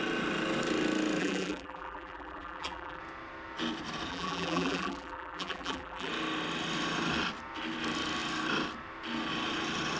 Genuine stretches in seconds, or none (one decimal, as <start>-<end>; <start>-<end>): 0.0-1.2; 3.0-4.1; 6.1-10.0